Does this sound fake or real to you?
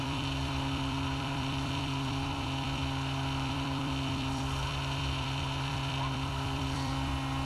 fake